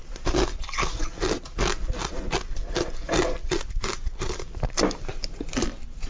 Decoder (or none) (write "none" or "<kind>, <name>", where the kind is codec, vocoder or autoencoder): vocoder, BigVGAN v2